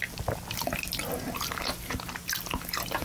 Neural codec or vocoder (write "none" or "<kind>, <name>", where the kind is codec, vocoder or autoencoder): none